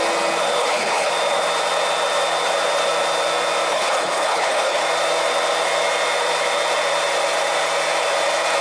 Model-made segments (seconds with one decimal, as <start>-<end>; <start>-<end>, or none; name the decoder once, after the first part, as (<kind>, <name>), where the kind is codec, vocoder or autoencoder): 0.6-1.1 (codec, HILCodec); 3.7-4.8